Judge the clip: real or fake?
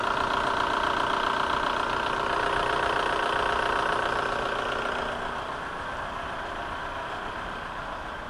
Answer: real